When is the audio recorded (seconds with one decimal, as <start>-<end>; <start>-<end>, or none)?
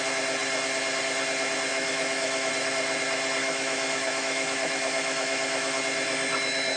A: 0.0-1.7; 2.5-3.4; 5.8-6.8